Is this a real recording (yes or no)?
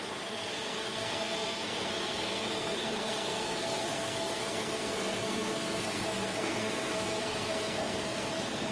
no